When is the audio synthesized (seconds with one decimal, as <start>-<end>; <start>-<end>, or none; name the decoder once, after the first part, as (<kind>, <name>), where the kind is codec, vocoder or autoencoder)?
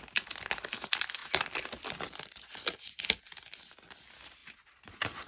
none